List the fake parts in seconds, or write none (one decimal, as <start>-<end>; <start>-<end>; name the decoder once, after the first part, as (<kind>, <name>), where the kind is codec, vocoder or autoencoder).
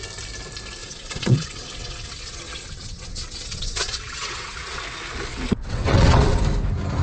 0.8-4.8 (vocoder, WaveNeXt); 5.3-6.4